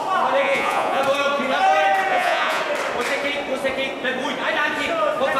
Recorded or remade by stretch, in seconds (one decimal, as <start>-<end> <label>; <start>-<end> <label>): 0.0-0.4 recorded; 0.4-1.0 remade; 1.0-2.1 recorded; 2.1-2.6 remade; 2.6-5.4 recorded